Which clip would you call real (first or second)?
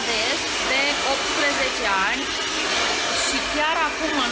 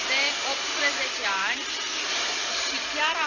first